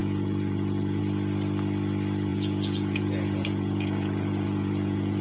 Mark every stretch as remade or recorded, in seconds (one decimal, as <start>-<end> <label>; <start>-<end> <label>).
0.0-1.0 remade; 1.0-2.3 recorded; 2.3-5.2 remade

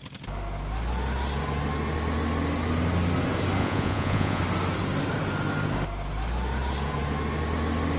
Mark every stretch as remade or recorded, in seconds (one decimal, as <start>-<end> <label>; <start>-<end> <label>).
0.0-3.6 recorded; 3.6-4.4 remade; 4.4-8.0 recorded

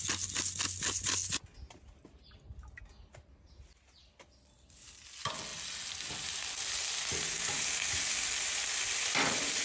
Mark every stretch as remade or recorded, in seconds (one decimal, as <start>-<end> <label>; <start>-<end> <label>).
0.0-9.6 recorded

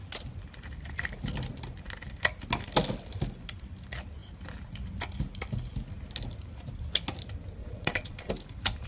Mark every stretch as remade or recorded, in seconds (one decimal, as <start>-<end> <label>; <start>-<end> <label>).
0.0-7.6 recorded; 7.6-8.3 remade; 8.3-8.9 recorded

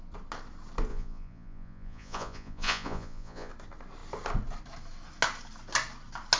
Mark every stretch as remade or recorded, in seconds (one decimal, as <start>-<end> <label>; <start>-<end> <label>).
0.0-0.9 recorded; 0.9-3.5 remade; 3.5-6.4 recorded

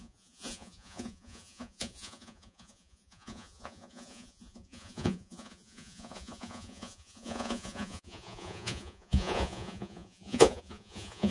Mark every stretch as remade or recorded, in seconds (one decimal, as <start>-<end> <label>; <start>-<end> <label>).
0.0-11.3 remade